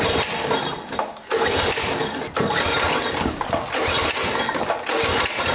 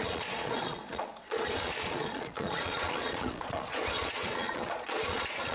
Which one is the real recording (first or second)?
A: first